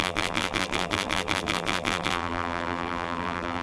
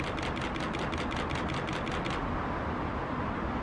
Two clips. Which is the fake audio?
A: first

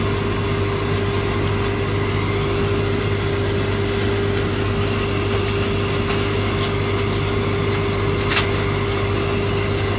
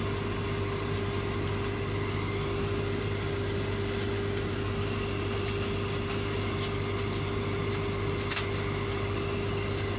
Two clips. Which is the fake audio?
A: second